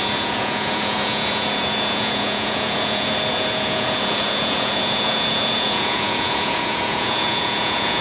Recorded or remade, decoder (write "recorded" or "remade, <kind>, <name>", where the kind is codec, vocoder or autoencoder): remade, vocoder, Vocos